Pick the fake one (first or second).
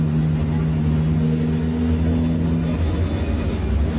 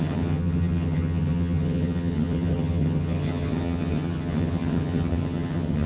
second